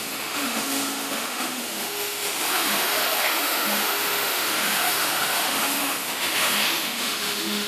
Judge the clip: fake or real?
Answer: fake